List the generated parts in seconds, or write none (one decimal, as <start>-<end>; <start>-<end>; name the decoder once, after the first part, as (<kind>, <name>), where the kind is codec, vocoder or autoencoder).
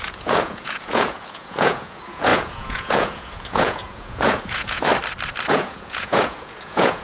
0.0-4.9 (vocoder, Vocos); 5.5-7.0